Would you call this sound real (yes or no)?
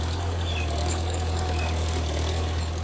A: no